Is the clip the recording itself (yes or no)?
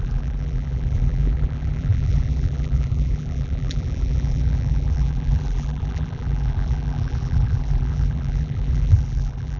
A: no